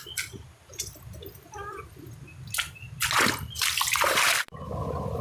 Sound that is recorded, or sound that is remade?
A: recorded